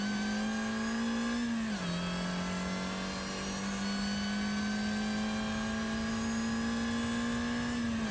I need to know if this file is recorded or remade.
recorded